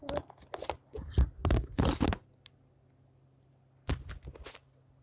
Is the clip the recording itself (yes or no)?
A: yes